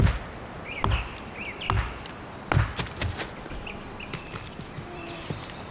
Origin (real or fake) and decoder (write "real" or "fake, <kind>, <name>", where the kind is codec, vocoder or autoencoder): real